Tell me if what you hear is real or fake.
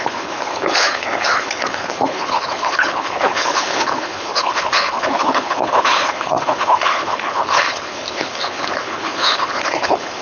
fake